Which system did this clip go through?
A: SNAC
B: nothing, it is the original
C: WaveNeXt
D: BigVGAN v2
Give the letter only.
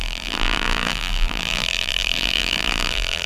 D